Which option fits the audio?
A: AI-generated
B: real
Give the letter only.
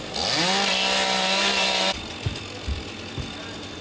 B